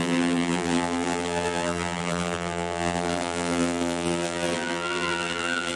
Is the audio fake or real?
fake